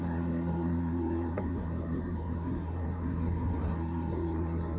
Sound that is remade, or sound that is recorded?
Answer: remade